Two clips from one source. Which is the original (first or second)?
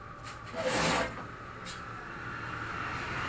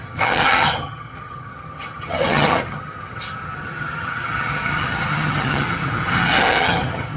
first